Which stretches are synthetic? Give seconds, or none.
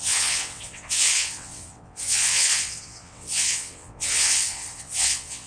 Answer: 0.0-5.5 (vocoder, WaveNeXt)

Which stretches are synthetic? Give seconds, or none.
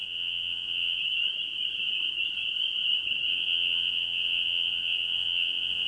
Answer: 0.0-1.0 (vocoder, WaveNeXt); 3.3-5.9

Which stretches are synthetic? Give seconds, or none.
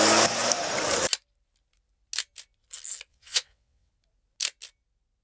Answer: 3.1-3.9 (vocoder, WaveNeXt)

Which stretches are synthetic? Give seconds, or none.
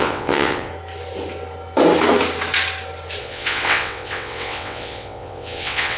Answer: 0.0-0.7 (vocoder, WaveNeXt); 3.2-6.0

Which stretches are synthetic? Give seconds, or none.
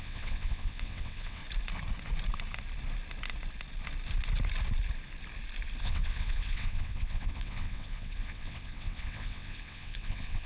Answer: 0.0-1.4 (vocoder, WaveNeXt); 5.8-10.5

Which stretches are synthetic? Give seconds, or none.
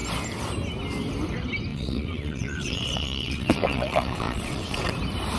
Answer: 1.7-4.9 (vocoder, WaveNeXt)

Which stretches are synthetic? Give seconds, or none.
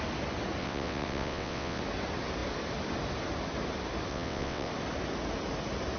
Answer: 0.6-1.8 (vocoder, WaveNeXt); 4.1-4.7